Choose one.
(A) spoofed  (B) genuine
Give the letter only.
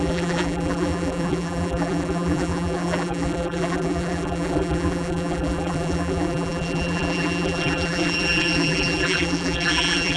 A